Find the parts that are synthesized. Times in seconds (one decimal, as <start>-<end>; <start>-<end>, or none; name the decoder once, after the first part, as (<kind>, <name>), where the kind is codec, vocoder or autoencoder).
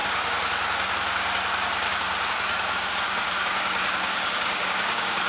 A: 1.9-5.3 (codec, DAC)